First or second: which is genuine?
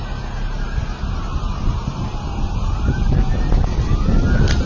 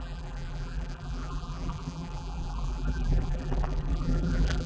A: first